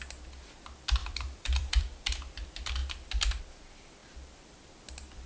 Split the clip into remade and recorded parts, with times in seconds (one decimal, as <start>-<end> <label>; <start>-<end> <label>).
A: 0.0-1.0 recorded; 1.0-1.8 remade; 1.8-5.3 recorded